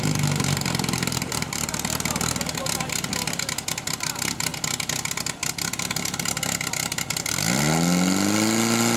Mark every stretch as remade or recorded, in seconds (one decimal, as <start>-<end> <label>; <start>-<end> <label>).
0.0-9.0 recorded